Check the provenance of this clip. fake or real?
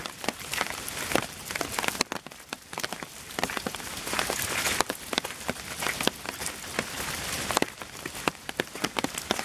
real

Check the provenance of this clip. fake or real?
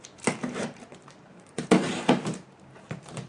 fake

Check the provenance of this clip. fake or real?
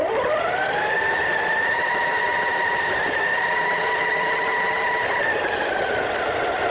real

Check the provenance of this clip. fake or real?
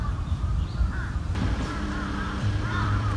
fake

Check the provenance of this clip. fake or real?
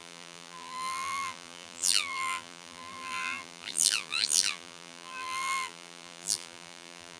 fake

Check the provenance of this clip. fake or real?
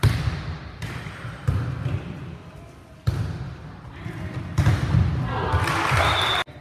real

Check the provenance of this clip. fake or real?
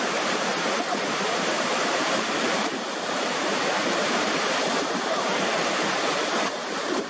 fake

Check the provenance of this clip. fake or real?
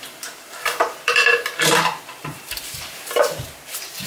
fake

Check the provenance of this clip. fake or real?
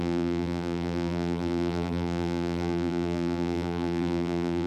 fake